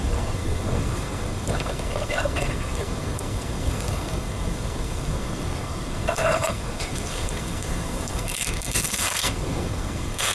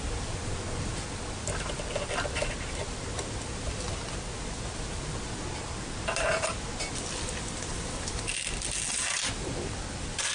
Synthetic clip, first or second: first